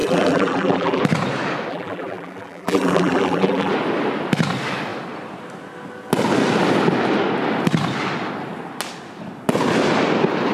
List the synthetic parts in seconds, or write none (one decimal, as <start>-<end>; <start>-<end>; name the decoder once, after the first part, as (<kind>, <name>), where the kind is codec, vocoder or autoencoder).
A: 0.0-1.0 (vocoder, BigVGAN v2); 1.7-3.7